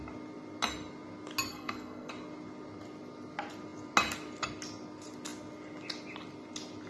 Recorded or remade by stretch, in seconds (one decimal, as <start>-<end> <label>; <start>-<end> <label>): 0.0-1.5 recorded; 1.5-2.1 remade; 2.1-6.9 recorded